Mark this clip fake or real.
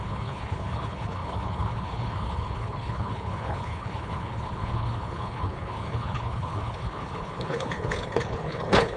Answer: fake